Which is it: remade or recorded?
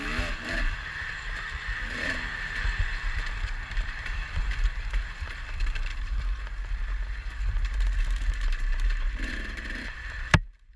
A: remade